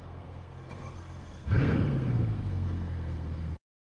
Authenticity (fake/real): fake